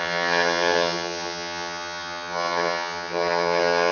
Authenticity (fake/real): fake